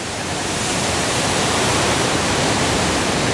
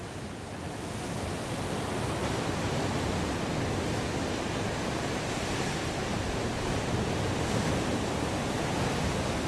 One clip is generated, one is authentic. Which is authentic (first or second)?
second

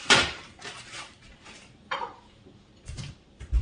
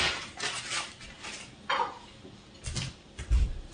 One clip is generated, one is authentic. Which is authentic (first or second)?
second